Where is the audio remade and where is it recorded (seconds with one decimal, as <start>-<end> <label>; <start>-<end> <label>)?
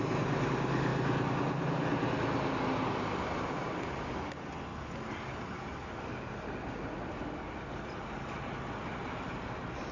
0.0-9.9 recorded